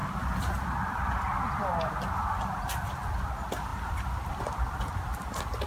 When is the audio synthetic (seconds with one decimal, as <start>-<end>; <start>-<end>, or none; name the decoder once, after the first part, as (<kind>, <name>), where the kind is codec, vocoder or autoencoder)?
3.7-5.7 (vocoder, BigVGAN v2)